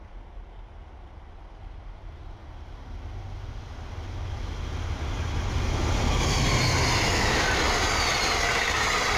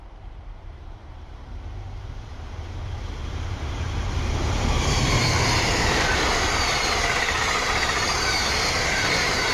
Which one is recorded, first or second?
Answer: first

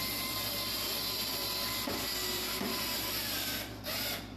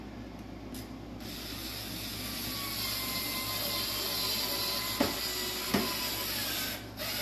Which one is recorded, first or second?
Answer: second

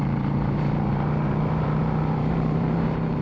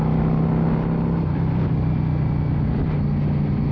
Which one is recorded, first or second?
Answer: second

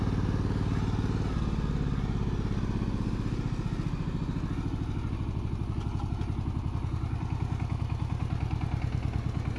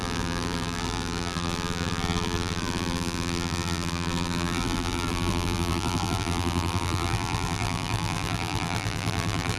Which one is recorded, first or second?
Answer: first